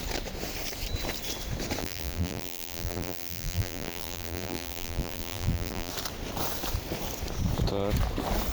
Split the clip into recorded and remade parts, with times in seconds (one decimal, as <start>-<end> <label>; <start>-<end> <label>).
0.0-1.8 recorded; 1.8-5.9 remade; 5.9-8.5 recorded